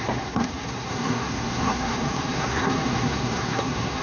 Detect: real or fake fake